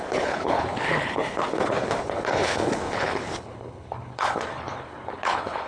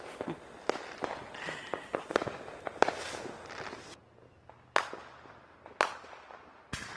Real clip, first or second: second